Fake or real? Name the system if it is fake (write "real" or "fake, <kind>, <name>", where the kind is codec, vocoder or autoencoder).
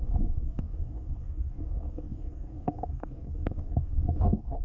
fake, codec, DAC